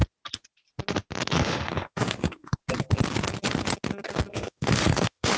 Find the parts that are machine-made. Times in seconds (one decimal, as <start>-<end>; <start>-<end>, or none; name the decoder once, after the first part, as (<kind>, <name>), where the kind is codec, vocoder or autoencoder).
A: 1.3-2.6 (autoencoder, DAC-VAE); 4.3-5.4